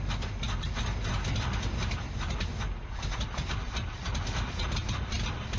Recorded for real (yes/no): yes